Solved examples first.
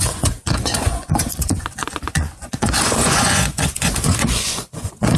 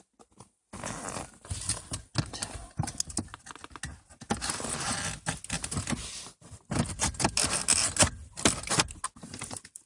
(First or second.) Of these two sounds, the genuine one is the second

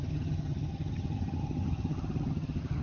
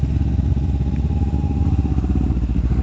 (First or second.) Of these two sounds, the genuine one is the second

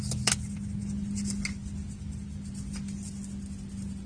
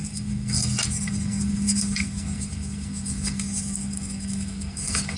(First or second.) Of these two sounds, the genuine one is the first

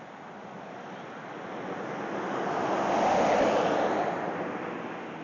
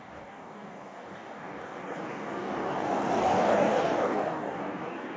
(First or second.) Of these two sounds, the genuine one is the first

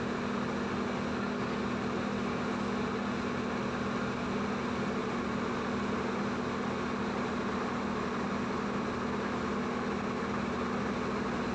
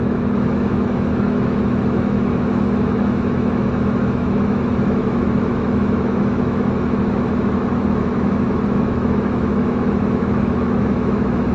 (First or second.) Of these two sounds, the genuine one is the first